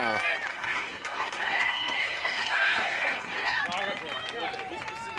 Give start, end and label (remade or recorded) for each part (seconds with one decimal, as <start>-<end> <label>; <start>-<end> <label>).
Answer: 0.0-0.5 recorded; 0.5-3.6 remade; 3.6-5.2 recorded